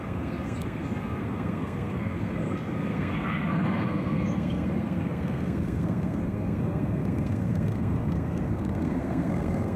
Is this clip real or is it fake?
fake